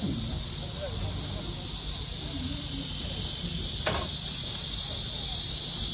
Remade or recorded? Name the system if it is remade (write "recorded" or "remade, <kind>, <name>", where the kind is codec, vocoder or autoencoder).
recorded